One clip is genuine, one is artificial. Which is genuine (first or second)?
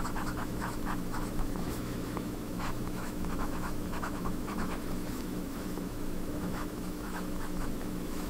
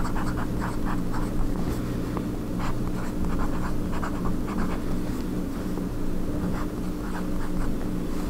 second